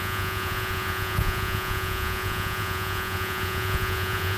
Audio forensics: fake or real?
fake